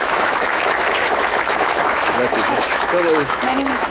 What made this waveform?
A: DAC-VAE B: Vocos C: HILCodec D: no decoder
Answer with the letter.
A